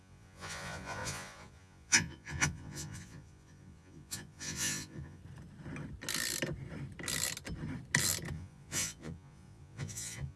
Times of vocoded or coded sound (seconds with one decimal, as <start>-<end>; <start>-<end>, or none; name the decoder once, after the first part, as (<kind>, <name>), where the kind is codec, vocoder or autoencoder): 0.0-5.2 (vocoder, Vocos); 8.3-10.4